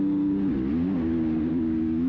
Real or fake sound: real